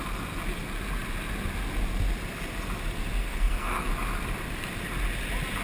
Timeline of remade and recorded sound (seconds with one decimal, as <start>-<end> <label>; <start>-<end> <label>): 0.0-3.2 recorded; 3.2-3.9 remade; 3.9-5.6 recorded